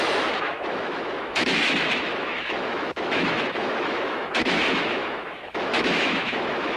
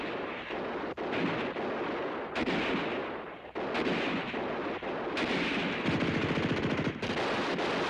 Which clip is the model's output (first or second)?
first